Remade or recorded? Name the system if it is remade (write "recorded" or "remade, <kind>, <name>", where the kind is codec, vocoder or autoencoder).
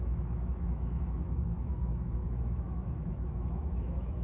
remade, autoencoder, DAC-VAE